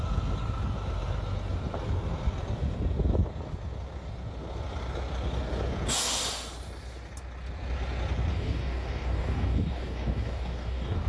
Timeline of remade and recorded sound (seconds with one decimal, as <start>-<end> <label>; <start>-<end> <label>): 0.0-8.3 recorded; 8.3-11.1 remade